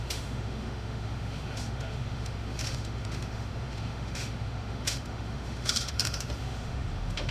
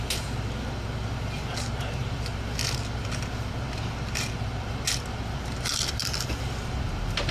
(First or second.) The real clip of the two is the second